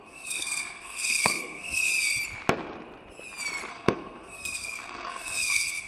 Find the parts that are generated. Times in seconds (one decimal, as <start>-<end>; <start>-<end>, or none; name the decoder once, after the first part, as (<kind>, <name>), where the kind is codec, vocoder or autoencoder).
0.0-1.9 (codec, SNAC); 3.7-5.9

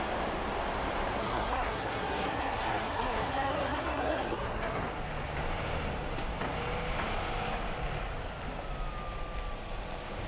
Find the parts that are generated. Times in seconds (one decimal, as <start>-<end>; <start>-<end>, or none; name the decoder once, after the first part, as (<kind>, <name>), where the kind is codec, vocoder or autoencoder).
1.2-4.8 (codec, SNAC)

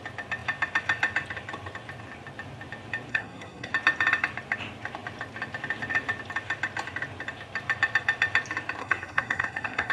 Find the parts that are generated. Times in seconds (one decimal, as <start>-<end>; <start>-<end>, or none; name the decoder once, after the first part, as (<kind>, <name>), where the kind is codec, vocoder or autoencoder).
3.1-3.7 (codec, SNAC); 8.8-9.9